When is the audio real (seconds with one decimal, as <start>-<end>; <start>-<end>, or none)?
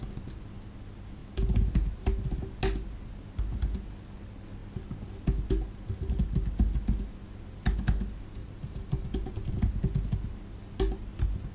0.0-8.4; 9.5-11.5